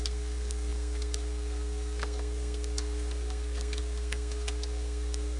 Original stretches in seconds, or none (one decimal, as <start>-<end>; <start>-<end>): none